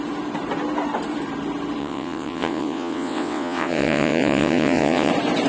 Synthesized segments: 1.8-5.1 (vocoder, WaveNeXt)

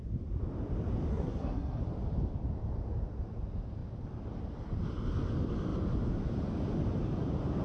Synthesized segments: 1.1-1.8 (codec, SNAC)

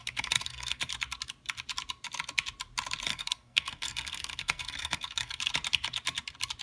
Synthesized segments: 0.0-0.8 (codec, SNAC); 3.1-5.4

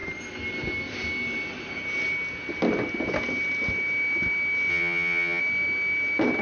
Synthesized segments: 4.7-5.4 (vocoder, HiFi-GAN)

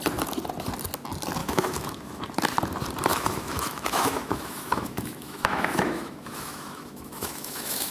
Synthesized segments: 1.4-2.2 (autoencoder, DAC-VAE); 3.1-7.9

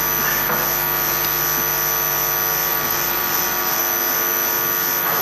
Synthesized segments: 2.7-3.8 (vocoder, BigVGAN v2)